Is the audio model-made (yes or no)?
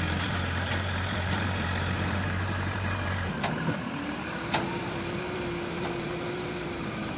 yes